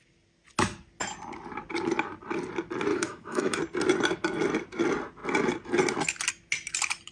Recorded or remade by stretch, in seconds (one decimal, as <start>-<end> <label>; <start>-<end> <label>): 0.0-2.9 recorded; 2.9-3.6 remade; 3.6-7.1 recorded